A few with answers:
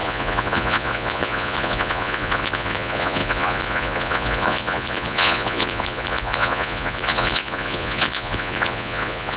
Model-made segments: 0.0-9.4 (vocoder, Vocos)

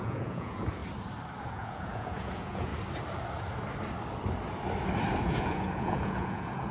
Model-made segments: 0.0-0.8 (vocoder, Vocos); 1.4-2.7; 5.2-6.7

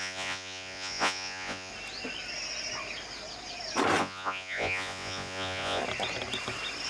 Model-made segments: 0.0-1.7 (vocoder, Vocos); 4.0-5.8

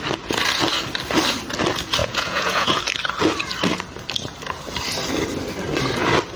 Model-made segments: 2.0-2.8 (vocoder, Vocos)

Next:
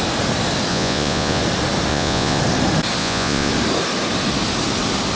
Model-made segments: 0.7-1.4 (vocoder, Vocos); 1.9-2.4; 3.0-3.5